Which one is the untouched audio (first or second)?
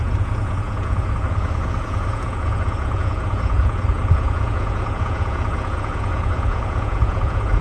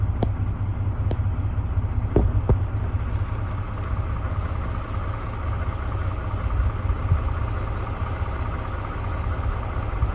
second